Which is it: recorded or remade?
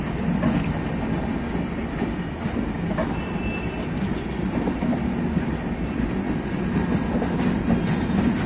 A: recorded